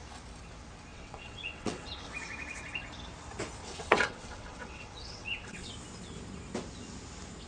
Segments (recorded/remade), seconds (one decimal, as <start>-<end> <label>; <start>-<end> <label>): 0.0-0.9 recorded; 0.9-2.1 remade; 2.1-3.6 recorded; 3.6-5.7 remade; 5.7-7.5 recorded